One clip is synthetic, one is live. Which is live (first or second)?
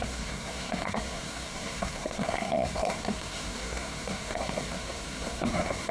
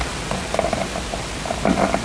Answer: second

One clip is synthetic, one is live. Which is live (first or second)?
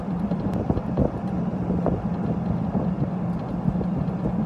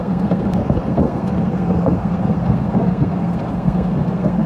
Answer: first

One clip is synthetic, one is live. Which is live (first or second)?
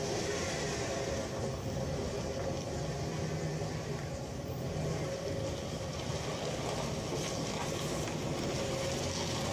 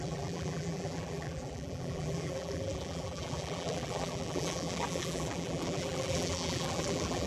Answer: first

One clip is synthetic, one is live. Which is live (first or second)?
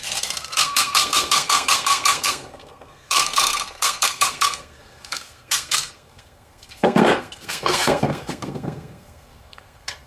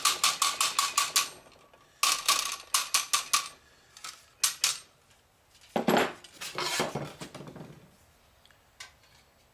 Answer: second